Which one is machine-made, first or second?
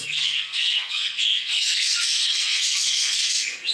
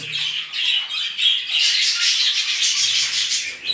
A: first